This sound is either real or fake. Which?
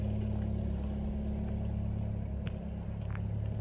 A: real